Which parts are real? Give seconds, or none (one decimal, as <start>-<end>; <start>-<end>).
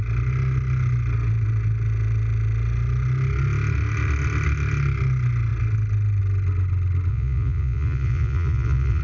0.0-7.1